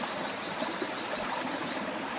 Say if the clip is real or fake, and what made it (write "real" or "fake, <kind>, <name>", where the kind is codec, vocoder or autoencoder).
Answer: real